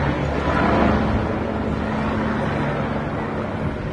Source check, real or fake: real